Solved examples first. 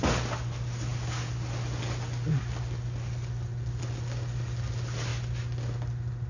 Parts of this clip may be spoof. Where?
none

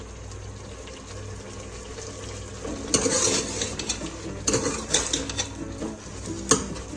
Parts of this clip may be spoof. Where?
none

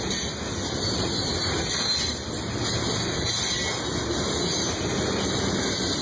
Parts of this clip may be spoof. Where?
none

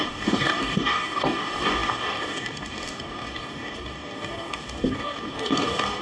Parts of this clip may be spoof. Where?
0.0-6.0 (codec, DAC)

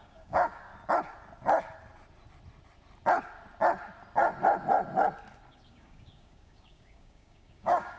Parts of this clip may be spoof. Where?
0.0-0.7 (codec, DAC); 5.5-8.0

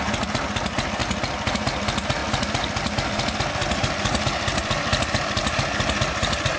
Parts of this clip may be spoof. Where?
none

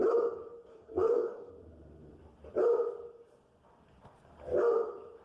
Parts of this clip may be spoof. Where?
0.7-1.5 (codec, DAC)